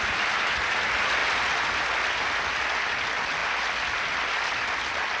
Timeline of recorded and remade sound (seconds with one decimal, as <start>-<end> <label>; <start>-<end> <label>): 0.0-5.2 recorded